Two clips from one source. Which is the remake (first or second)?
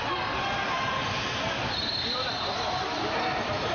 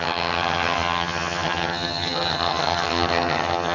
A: second